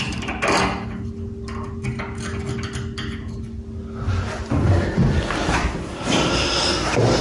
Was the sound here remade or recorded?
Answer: recorded